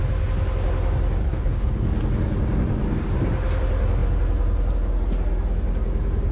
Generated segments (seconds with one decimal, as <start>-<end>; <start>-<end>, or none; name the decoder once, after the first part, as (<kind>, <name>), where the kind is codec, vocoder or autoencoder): 1.2-1.7 (codec, HILCodec)